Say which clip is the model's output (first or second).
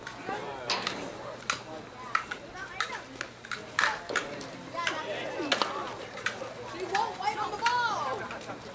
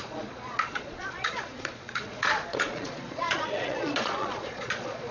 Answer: second